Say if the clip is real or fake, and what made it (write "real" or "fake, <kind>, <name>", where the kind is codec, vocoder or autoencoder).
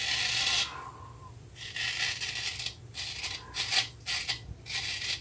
real